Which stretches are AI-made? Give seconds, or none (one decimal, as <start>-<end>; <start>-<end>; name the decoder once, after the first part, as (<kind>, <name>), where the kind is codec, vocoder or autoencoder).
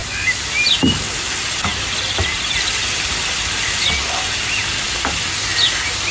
none